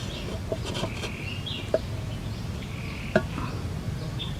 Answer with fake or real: real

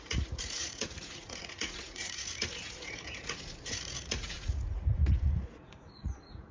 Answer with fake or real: fake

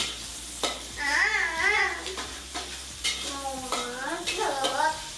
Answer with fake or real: real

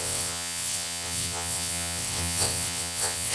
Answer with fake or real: fake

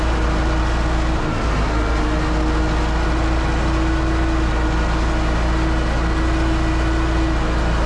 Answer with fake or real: real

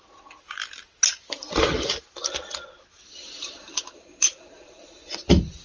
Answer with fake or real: real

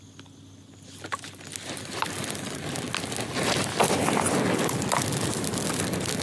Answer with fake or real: real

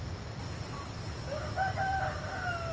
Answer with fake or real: real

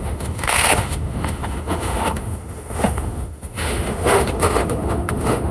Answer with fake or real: fake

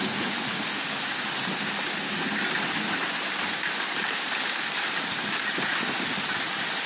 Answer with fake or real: real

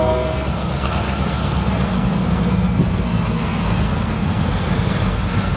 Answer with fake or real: fake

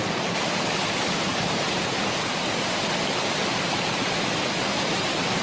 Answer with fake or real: real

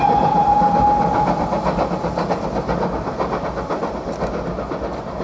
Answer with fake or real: real